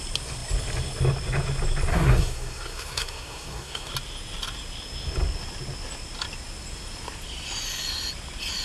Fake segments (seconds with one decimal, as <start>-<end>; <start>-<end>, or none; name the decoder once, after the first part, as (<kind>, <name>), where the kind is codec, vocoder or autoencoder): 1.9-3.9 (codec, SNAC)